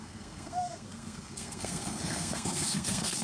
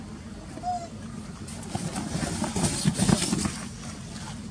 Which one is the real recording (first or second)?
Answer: second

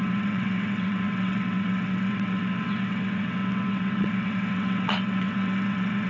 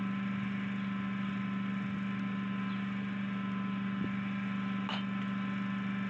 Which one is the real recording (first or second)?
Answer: second